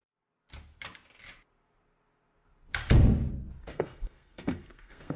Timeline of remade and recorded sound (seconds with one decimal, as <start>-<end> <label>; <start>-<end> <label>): 0.0-3.7 recorded; 3.7-5.2 remade